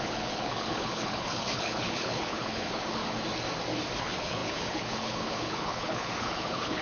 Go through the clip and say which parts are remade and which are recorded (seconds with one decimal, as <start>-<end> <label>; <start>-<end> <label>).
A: 0.0-3.0 remade; 3.0-4.0 recorded; 4.0-6.8 remade